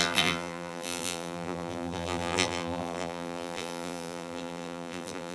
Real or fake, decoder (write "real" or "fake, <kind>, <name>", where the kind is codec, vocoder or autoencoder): fake, vocoder, BigVGAN v2